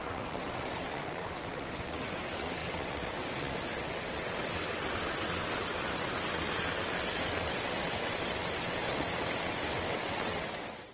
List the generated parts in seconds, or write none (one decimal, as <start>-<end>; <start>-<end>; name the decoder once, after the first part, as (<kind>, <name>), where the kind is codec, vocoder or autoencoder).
0.0-10.9 (vocoder, WaveNeXt)